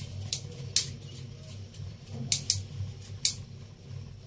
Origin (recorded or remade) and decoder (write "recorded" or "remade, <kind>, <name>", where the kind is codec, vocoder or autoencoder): recorded